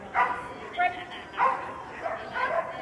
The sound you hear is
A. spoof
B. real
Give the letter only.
B